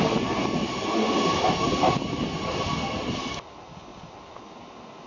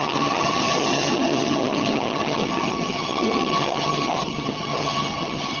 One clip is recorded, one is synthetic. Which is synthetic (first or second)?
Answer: second